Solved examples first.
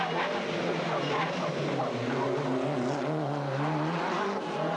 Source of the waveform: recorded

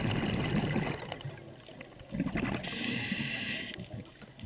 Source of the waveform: recorded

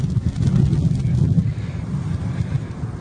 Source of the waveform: recorded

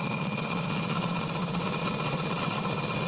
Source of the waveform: remade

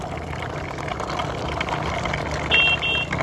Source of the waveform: recorded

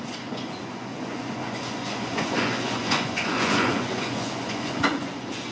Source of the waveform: remade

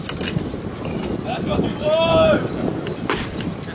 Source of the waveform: recorded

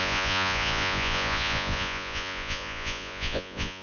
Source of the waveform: remade